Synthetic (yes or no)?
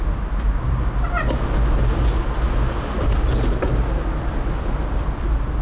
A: no